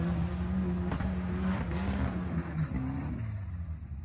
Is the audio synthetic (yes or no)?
no